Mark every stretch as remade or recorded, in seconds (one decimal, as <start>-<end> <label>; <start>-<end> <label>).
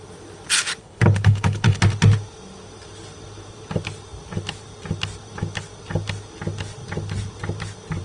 0.0-0.8 recorded; 0.8-1.8 remade; 1.8-8.0 recorded